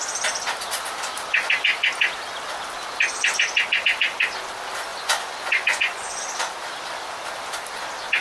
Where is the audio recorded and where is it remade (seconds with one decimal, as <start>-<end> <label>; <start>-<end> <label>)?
0.0-4.9 recorded; 4.9-6.2 remade; 6.2-8.2 recorded